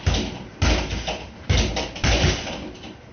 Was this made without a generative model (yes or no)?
yes